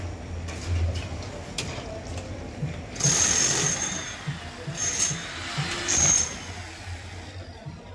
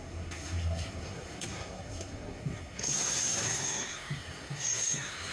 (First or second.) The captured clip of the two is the first